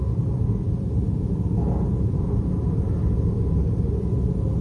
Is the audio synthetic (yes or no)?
no